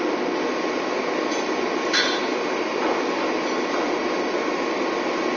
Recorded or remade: recorded